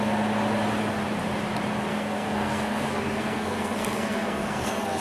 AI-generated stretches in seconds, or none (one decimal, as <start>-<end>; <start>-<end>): 1.9-5.0